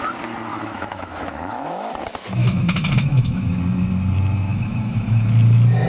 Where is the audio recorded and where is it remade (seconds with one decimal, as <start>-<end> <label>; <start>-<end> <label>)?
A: 0.0-0.5 recorded; 0.5-1.9 remade; 1.9-2.4 recorded; 2.4-3.6 remade; 3.6-4.5 recorded; 4.5-5.3 remade; 5.3-5.9 recorded